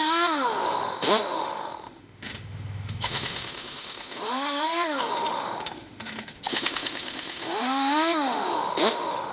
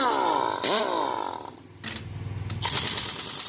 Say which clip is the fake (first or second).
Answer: first